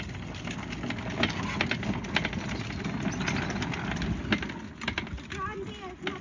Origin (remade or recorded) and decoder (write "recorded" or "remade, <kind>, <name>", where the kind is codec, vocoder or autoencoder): recorded